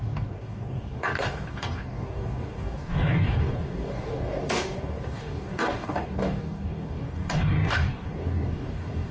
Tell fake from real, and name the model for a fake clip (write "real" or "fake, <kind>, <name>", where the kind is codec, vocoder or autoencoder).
fake, codec, DAC